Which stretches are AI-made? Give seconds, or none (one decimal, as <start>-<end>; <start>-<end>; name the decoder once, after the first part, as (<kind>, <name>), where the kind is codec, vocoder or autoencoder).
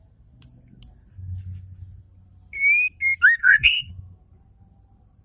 3.4-3.9 (codec, SNAC)